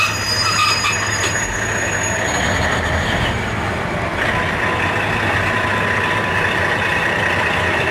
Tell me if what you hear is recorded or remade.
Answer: recorded